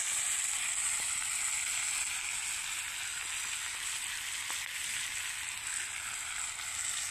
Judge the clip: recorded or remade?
recorded